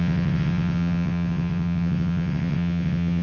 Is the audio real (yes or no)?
no